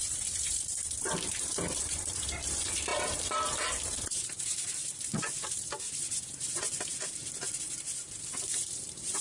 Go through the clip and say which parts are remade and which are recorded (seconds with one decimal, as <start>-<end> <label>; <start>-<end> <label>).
0.0-6.9 remade; 6.9-7.5 recorded; 7.5-9.2 remade